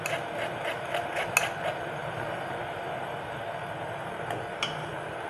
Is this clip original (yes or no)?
yes